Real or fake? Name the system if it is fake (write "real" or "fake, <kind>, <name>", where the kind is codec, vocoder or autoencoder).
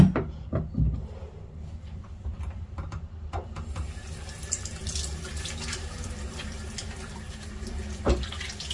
fake, vocoder, BigVGAN v2